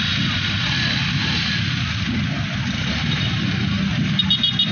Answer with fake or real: real